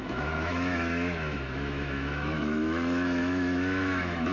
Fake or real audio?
fake